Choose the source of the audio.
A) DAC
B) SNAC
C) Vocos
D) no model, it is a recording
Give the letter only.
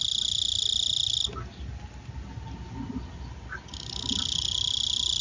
D